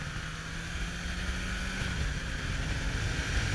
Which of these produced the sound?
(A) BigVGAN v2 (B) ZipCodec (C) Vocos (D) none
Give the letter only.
D